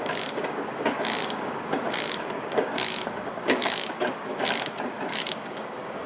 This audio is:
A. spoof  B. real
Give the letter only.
A